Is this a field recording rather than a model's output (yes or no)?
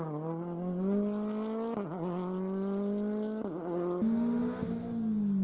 yes